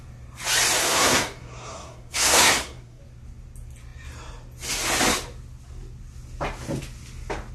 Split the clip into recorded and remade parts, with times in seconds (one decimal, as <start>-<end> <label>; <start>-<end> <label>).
0.0-0.8 recorded; 0.8-3.0 remade; 3.0-7.5 recorded